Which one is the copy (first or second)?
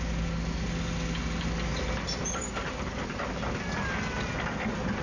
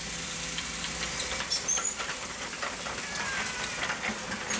second